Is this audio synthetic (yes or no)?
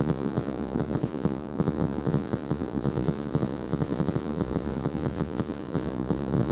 yes